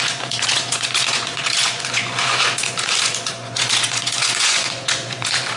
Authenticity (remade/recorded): remade